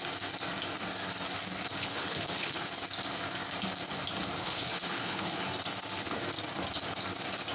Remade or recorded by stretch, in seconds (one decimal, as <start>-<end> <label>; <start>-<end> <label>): 0.0-1.8 recorded; 1.8-2.7 remade; 2.7-4.4 recorded; 4.4-5.4 remade; 5.4-7.5 recorded